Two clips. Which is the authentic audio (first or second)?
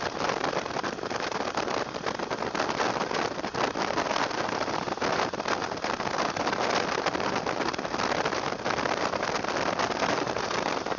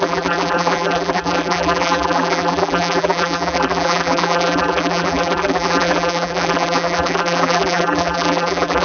first